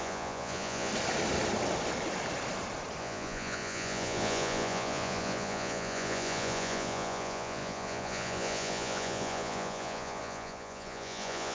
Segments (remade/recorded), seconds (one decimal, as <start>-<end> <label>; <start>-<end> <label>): 0.0-0.9 remade; 0.9-3.0 recorded; 3.0-11.5 remade

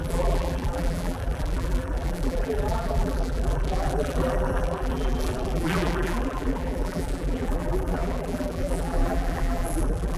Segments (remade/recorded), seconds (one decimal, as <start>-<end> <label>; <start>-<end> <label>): 0.0-10.2 remade